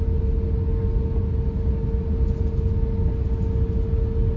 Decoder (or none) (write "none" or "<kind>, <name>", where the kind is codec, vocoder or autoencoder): none